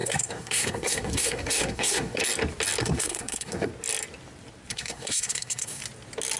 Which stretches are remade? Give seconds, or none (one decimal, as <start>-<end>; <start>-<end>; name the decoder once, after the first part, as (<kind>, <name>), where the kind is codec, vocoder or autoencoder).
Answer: 0.0-2.2 (codec, SNAC); 2.8-3.7; 4.7-5.8